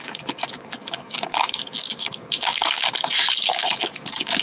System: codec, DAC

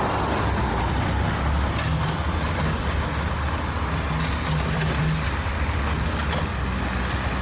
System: none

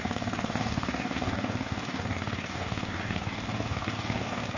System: codec, DAC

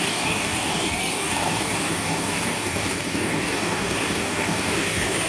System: codec, DAC